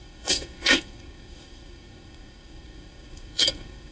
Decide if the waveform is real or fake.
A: fake